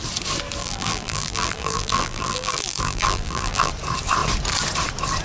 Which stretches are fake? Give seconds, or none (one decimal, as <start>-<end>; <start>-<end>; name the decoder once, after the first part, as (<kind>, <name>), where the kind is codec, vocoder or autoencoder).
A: 0.6-3.7 (vocoder, BigVGAN v2)